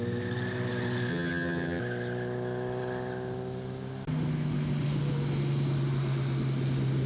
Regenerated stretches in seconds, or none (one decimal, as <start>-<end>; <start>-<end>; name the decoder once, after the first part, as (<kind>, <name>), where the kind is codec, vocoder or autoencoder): 1.1-1.8 (vocoder, HiFi-GAN)